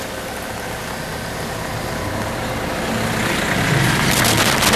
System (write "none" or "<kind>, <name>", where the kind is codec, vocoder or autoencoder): none